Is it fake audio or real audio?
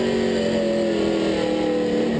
real